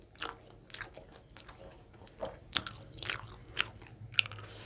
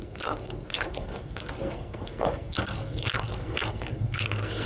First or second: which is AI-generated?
second